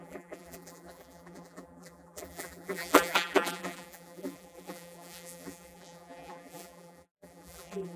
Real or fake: fake